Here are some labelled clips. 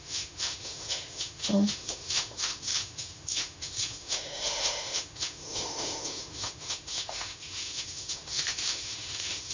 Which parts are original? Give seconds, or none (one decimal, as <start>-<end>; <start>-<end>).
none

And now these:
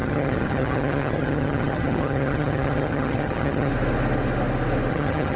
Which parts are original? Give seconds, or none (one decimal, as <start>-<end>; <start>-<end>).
3.7-4.9

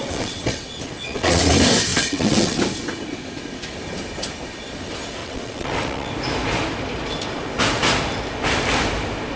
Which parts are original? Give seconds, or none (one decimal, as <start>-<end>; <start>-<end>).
1.5-1.9; 2.6-5.2; 6.1-9.4

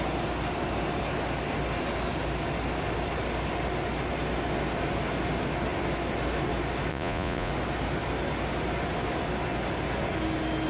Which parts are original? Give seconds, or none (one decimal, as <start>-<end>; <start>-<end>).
0.0-6.9; 7.5-10.7

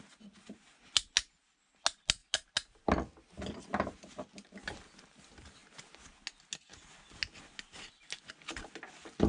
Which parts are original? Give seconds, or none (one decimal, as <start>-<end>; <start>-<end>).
0.0-9.3

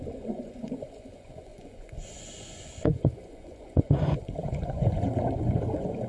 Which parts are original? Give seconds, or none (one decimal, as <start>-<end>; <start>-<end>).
none

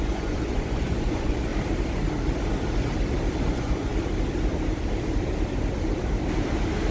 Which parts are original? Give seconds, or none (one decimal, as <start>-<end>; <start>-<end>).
1.5-3.5; 3.9-6.9